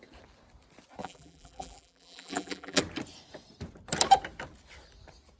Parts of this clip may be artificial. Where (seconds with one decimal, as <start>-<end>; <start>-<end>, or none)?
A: 1.0-2.8